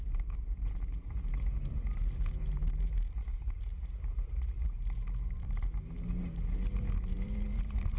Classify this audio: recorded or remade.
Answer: remade